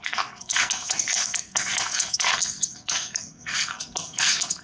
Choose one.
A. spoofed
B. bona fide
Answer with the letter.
A